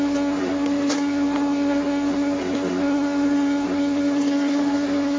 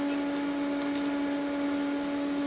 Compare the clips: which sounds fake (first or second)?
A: first